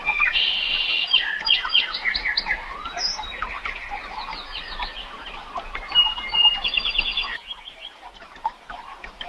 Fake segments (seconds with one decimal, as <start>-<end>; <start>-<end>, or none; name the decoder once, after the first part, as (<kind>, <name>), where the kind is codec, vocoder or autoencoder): 7.5-9.3 (vocoder, BigVGAN v2)

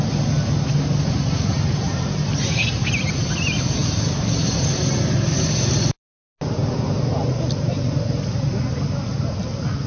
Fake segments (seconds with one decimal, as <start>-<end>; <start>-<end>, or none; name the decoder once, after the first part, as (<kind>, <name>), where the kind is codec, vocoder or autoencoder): none

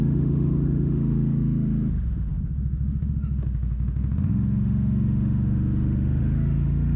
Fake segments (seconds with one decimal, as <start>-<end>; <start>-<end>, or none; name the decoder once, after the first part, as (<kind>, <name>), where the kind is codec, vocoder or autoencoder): 0.0-7.0 (autoencoder, DAC-VAE)

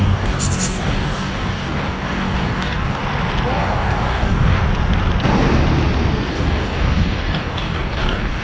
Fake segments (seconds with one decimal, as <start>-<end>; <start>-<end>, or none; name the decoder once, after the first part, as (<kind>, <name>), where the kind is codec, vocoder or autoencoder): 0.0-3.0 (codec, DAC); 3.5-4.6; 6.3-8.4

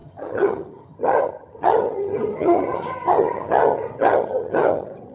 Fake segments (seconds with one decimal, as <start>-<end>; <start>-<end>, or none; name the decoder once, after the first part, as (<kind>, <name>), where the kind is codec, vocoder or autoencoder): 0.0-5.1 (vocoder, HiFi-GAN)

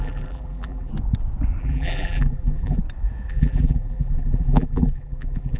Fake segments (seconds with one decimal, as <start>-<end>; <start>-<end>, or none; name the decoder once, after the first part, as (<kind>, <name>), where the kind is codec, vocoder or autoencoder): 0.0-0.9 (vocoder, BigVGAN v2); 1.6-2.8; 3.3-5.6

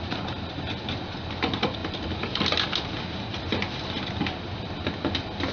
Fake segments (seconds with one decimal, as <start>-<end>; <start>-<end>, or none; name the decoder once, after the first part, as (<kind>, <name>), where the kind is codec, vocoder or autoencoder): none

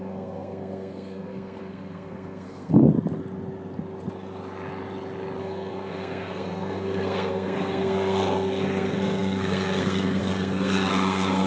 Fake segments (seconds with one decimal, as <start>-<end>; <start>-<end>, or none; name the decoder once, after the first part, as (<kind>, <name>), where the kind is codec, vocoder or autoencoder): 0.0-2.8 (codec, SNAC); 5.4-11.5